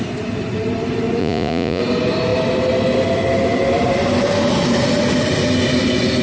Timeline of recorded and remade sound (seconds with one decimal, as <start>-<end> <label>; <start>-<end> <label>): 0.0-1.2 recorded; 1.2-1.8 remade; 1.8-6.2 recorded